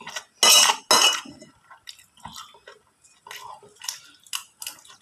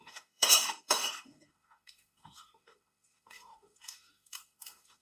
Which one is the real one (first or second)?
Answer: first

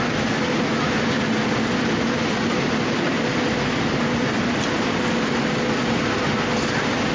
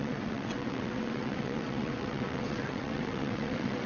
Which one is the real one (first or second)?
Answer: first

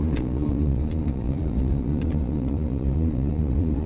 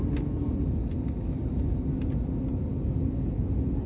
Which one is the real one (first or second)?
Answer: second